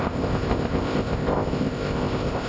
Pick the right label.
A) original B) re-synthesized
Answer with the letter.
B